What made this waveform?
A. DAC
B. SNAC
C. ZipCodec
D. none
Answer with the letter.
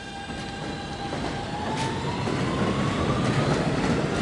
D